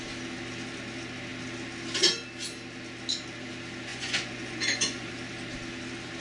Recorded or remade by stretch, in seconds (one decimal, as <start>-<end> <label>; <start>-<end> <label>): 0.0-3.9 recorded; 3.9-5.1 remade; 5.1-6.2 recorded